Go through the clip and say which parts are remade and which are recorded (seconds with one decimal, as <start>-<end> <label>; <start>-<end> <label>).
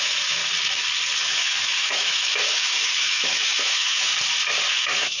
0.0-0.4 remade; 0.4-1.2 recorded; 1.2-4.1 remade; 4.1-4.7 recorded; 4.7-5.2 remade